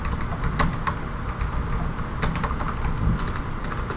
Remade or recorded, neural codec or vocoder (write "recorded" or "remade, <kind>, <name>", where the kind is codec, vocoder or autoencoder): recorded